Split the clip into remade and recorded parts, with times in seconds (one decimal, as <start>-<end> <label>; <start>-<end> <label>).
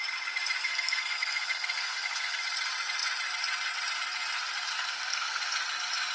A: 0.0-0.6 recorded; 0.6-2.4 remade; 2.4-4.7 recorded; 4.7-5.4 remade; 5.4-6.1 recorded